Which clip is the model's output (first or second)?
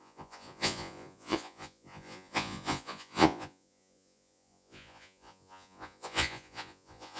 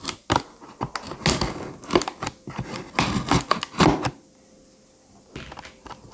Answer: first